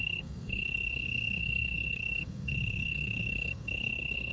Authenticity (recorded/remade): remade